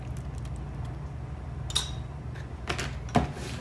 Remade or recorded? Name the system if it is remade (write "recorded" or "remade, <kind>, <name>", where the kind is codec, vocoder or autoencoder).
recorded